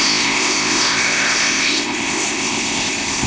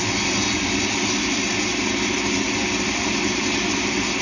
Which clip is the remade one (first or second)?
first